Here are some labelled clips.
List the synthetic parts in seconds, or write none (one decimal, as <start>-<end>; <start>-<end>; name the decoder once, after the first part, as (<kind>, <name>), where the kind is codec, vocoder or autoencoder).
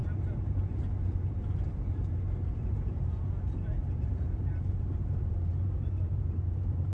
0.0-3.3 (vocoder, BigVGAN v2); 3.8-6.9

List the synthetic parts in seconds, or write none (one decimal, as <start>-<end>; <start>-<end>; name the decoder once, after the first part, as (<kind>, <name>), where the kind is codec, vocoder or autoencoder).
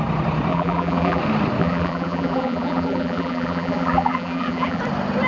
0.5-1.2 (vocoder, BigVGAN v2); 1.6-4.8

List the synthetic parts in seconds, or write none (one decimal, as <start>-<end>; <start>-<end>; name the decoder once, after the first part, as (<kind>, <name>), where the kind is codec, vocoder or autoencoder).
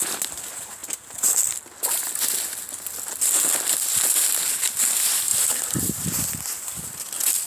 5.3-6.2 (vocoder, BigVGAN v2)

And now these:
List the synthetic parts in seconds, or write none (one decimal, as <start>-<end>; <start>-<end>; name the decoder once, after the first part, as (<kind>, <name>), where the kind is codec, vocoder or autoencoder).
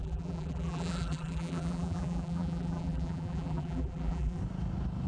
0.0-4.4 (vocoder, BigVGAN v2)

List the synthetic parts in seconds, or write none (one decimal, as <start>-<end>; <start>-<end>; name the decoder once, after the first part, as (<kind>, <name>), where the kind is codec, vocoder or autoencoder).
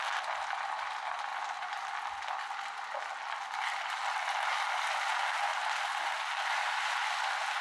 none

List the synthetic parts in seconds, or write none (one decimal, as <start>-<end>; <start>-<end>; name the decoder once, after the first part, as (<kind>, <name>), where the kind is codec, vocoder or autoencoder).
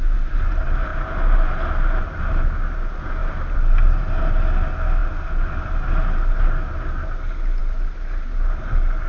none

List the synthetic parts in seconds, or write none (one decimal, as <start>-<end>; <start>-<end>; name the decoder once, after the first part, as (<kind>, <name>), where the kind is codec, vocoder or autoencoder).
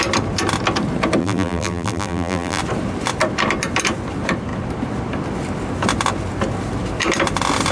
1.2-2.6 (vocoder, BigVGAN v2)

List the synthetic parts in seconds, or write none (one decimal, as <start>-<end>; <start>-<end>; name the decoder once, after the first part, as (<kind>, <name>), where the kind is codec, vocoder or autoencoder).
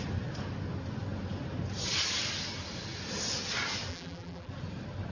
3.9-4.5 (vocoder, BigVGAN v2)